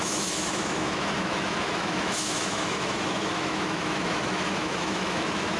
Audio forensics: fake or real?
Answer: fake